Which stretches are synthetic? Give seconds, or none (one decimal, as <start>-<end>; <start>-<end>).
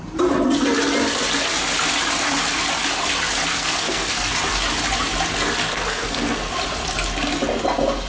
3.5-4.3; 5.7-6.5